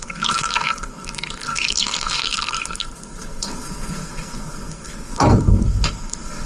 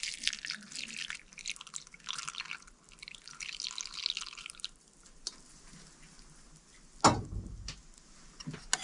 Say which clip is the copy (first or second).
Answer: first